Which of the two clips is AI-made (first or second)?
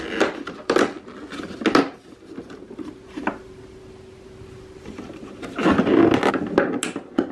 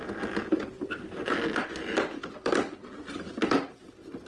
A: second